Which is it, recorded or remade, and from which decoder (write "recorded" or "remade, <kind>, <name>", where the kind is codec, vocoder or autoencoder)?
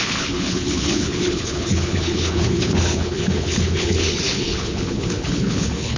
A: remade, codec, HILCodec